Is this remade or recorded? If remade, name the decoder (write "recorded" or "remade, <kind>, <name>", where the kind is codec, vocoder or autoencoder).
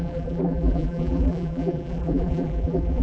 remade, vocoder, BigVGAN v2